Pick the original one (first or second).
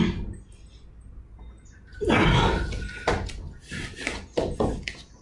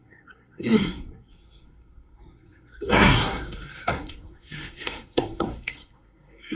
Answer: first